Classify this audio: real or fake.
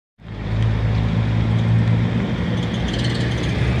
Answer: real